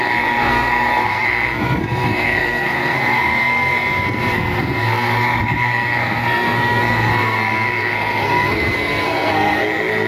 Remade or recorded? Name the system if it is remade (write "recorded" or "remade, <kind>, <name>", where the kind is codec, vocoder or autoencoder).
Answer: remade, codec, SNAC